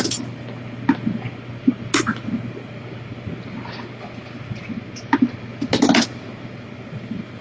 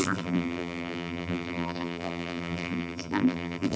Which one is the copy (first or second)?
second